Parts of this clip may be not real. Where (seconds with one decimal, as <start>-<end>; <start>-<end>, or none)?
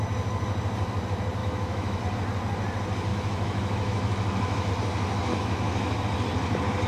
1.4-2.0; 3.1-4.7; 5.3-6.0